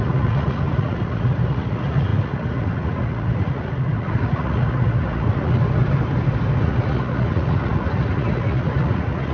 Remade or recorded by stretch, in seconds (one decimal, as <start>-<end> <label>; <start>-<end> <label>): 0.0-5.6 remade; 5.6-6.6 recorded; 6.6-9.3 remade